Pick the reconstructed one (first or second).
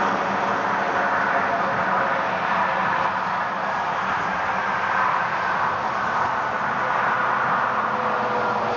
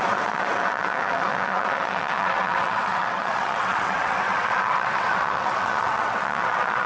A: second